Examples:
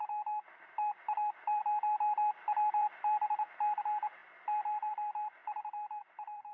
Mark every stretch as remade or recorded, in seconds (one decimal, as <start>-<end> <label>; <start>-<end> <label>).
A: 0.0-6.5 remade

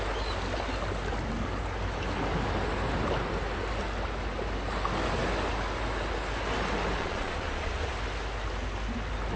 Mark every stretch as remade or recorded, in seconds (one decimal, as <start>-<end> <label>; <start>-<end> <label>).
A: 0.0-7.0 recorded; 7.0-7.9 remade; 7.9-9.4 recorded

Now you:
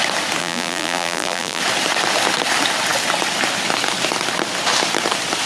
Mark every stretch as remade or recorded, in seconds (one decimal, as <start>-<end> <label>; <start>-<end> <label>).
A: 0.0-0.4 recorded; 0.4-1.6 remade; 1.6-5.5 recorded